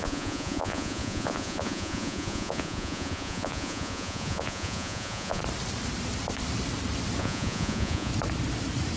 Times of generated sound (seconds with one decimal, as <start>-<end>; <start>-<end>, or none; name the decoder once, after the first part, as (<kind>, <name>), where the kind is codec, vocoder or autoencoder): 0.0-5.4 (vocoder, Vocos); 7.2-8.1